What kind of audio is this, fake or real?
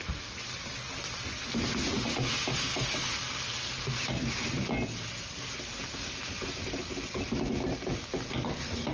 real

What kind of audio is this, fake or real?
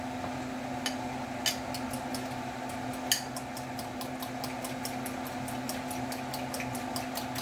real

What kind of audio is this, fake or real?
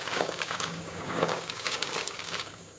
fake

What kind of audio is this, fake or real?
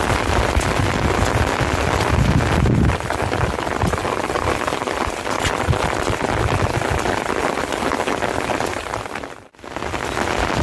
real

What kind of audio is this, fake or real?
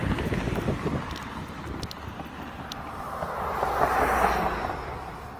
real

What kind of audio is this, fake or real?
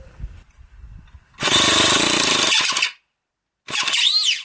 real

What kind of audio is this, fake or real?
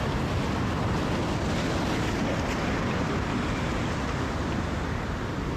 real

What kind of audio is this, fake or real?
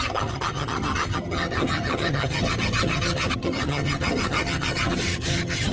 fake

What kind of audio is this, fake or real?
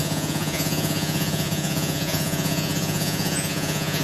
fake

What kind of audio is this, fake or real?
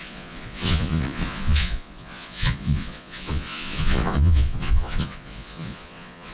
fake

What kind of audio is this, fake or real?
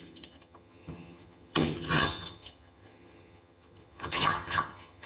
fake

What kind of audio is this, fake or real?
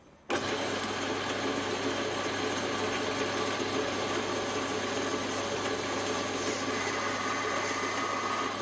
real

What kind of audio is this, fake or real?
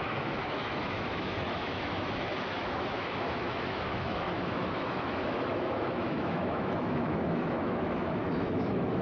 fake